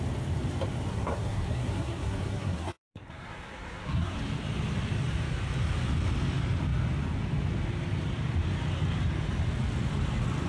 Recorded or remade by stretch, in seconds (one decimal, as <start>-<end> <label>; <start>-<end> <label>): 0.0-0.9 recorded; 0.9-4.2 remade; 4.2-10.5 recorded